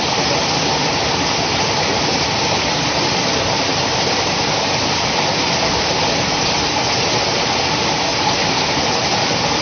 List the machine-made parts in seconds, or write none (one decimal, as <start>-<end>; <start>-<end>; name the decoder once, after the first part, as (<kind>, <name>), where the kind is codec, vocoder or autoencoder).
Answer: none